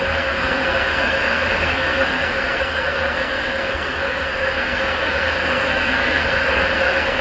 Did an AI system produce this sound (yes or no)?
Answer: yes